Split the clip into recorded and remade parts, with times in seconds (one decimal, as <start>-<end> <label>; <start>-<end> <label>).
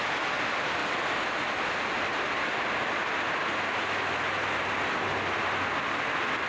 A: 0.0-6.5 recorded